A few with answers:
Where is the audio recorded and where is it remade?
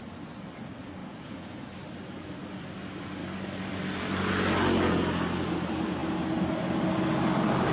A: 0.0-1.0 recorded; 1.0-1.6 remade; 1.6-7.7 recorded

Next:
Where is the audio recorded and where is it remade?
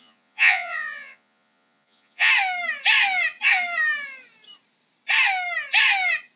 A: 0.0-2.3 remade; 2.3-6.4 recorded